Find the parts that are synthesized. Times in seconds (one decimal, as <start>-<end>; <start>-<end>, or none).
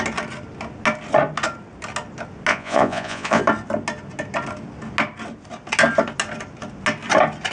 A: 2.5-3.4